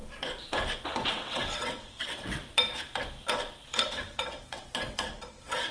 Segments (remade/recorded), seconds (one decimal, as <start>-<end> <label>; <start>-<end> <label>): 0.0-1.1 recorded; 1.1-2.4 remade; 2.4-3.8 recorded; 3.8-5.7 remade